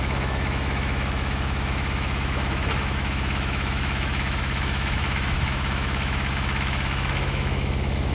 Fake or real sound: fake